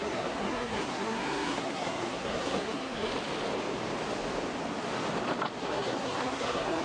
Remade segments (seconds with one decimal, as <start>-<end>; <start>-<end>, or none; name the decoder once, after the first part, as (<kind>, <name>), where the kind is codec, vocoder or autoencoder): 0.0-3.1 (codec, SNAC); 5.6-6.8